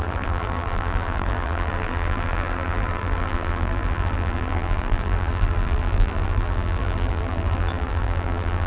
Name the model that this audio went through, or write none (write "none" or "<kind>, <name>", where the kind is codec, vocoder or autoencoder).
vocoder, BigVGAN v2